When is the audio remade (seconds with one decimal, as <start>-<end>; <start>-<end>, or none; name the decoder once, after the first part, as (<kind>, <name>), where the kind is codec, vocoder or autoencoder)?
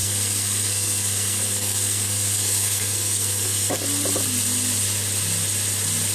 0.0-3.7 (codec, SNAC)